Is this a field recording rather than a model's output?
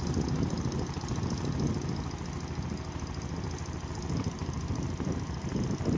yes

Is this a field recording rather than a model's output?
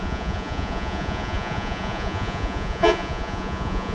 no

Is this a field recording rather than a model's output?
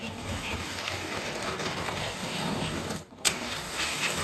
no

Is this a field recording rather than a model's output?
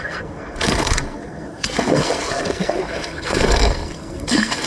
no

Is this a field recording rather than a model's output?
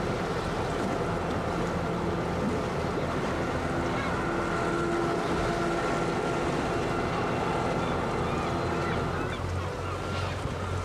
yes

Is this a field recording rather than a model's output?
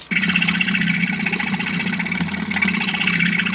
yes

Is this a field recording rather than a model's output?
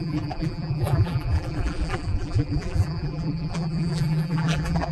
no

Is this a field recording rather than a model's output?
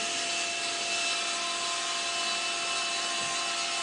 yes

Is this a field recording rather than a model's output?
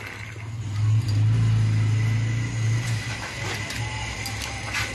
yes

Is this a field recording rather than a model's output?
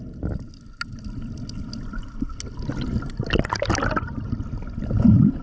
yes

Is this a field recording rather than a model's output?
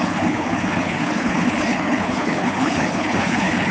no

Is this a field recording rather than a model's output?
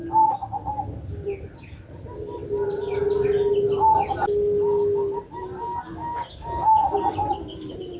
yes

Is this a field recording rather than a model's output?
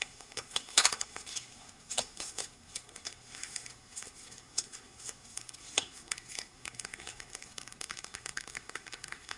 no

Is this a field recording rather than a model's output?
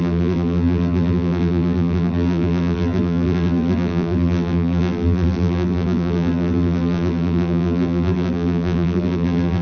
no